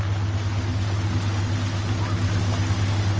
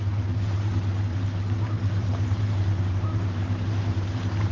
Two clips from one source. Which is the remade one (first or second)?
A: second